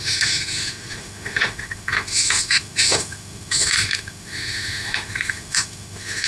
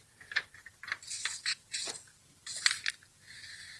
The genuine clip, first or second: second